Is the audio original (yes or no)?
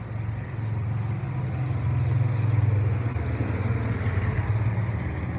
yes